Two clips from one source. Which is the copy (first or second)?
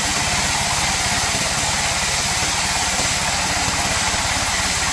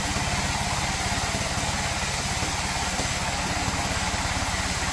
first